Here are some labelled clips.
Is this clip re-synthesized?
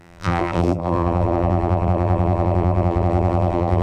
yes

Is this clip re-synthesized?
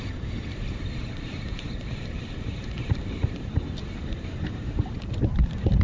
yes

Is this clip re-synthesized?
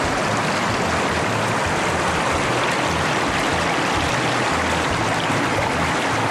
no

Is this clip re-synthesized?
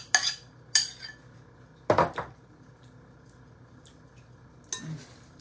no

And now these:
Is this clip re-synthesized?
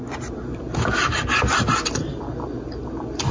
no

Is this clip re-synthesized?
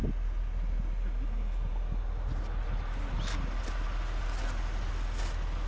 no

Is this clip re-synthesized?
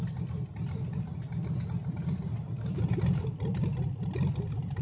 no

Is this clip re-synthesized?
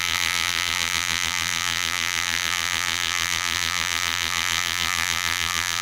yes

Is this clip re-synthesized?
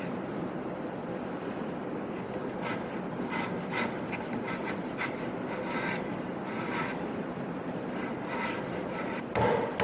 yes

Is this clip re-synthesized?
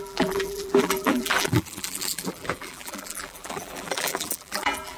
yes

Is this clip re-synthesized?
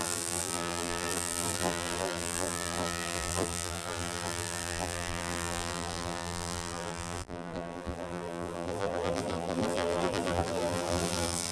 yes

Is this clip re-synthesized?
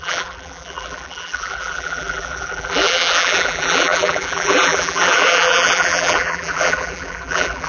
yes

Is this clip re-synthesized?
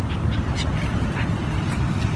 yes